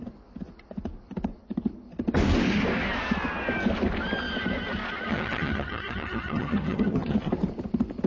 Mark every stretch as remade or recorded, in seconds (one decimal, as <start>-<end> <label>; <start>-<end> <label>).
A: 0.0-5.1 recorded; 5.1-7.3 remade; 7.3-8.1 recorded